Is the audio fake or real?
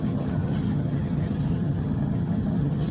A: fake